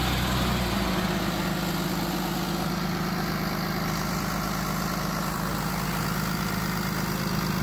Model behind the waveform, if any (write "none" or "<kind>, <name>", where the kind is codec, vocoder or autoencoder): none